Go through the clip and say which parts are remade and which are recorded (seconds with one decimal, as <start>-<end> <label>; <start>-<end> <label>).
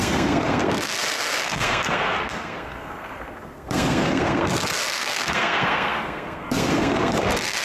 0.0-7.6 remade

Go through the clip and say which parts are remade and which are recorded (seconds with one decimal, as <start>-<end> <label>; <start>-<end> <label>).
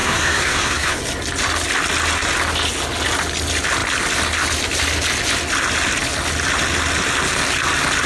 0.0-1.0 remade; 1.0-8.1 recorded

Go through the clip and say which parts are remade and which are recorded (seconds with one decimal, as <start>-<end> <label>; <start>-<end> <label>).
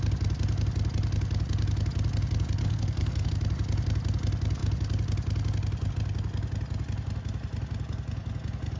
0.0-2.6 recorded; 2.6-3.3 remade; 3.3-8.8 recorded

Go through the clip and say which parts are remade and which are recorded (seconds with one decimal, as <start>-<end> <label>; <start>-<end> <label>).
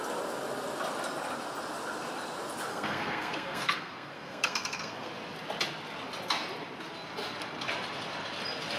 0.0-2.7 recorded; 2.7-5.1 remade; 5.1-8.8 recorded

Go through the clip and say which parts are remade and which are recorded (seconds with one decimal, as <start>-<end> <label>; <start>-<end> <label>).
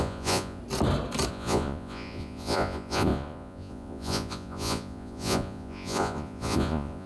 0.0-0.6 remade; 0.6-1.3 recorded; 1.3-7.1 remade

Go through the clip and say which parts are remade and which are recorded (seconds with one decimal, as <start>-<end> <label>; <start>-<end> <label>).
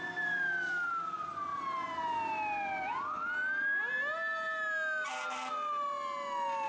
0.0-6.7 recorded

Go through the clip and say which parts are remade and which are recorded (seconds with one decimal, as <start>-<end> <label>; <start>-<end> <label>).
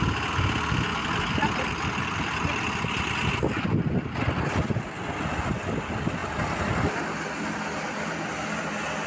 0.0-9.1 recorded